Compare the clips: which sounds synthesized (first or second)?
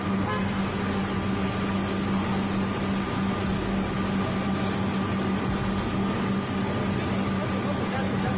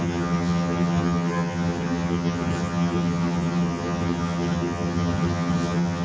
second